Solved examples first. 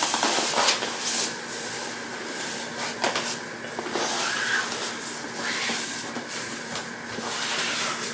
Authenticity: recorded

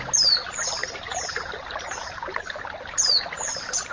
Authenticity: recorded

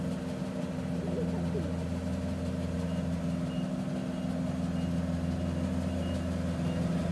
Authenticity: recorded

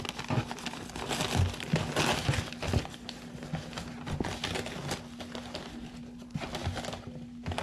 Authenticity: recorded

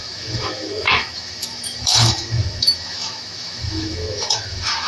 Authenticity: remade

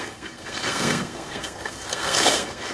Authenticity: remade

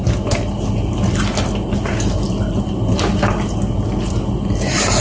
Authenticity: recorded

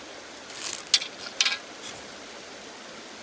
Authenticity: recorded